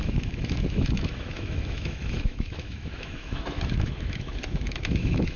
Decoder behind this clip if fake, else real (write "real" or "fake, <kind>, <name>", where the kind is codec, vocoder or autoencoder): fake, autoencoder, DAC-VAE